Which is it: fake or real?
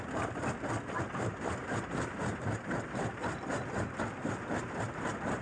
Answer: real